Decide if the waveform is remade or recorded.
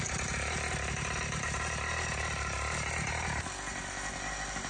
recorded